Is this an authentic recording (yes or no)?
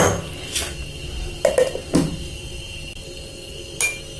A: yes